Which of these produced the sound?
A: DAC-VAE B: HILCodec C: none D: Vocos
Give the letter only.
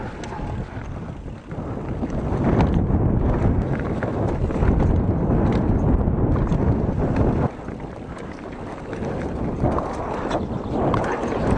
C